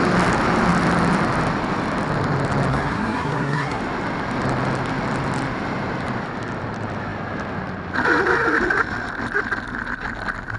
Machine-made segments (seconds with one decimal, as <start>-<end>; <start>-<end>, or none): 2.7-3.8